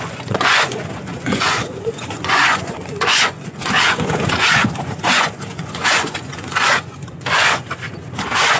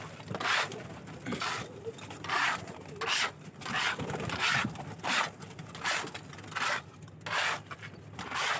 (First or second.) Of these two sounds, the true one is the second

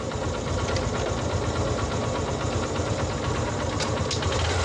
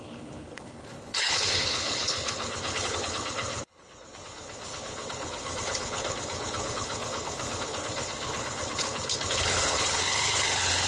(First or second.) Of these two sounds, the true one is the first